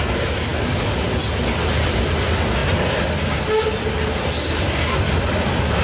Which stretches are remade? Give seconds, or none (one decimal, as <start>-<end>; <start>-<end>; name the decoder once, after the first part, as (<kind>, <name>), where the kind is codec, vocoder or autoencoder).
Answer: none

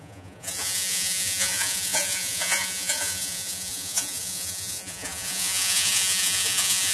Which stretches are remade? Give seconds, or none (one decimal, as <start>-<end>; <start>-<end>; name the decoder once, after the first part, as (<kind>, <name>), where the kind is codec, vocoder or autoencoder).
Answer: 0.0-6.9 (vocoder, Vocos)

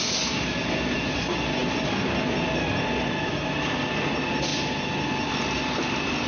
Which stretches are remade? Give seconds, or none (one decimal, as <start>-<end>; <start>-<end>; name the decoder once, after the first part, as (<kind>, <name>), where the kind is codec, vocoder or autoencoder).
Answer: none

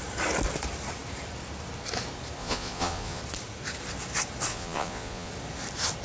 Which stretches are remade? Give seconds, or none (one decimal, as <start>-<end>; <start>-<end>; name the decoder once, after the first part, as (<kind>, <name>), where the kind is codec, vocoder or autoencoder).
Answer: 2.4-3.2 (vocoder, Vocos); 4.5-5.3

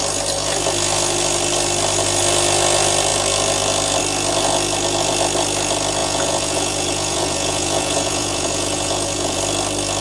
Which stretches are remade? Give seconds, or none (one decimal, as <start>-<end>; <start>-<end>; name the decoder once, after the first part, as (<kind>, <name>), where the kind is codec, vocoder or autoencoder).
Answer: 6.0-9.4 (vocoder, Vocos)